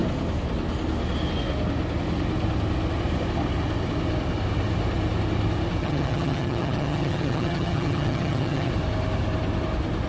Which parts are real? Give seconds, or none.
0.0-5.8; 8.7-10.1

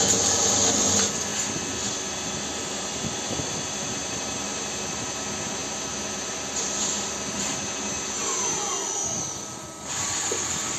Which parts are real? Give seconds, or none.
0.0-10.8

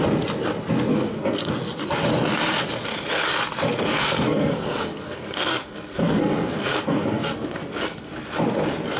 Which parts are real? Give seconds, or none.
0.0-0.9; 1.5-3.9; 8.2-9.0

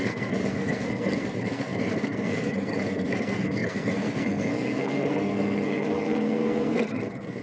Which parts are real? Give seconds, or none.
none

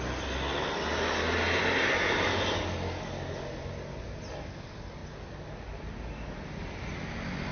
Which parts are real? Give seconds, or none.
0.0-7.5